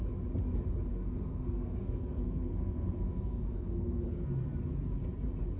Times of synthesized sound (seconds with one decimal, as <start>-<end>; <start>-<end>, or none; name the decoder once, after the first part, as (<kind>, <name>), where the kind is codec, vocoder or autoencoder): 0.9-4.3 (codec, SNAC)